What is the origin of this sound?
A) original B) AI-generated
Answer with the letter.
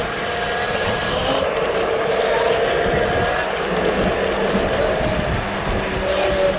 A